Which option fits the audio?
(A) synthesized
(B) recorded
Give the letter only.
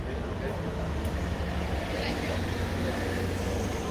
B